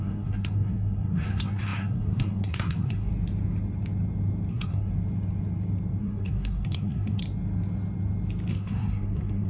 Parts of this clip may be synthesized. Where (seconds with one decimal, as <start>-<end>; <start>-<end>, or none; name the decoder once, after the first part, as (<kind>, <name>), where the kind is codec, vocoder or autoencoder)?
0.0-3.1 (codec, SNAC); 4.5-4.9; 6.0-7.2; 8.5-9.5